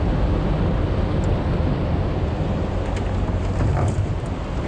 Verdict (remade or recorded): recorded